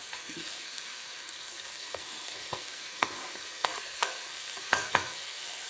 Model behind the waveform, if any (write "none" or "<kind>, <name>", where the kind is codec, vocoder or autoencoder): codec, SNAC